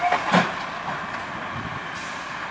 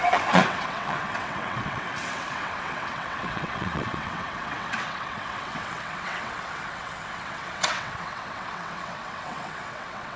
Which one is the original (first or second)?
first